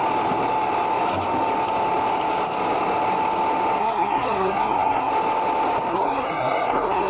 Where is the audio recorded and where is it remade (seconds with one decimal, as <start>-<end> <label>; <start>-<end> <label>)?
0.0-3.8 recorded; 3.8-5.1 remade; 5.1-5.9 recorded; 5.9-7.1 remade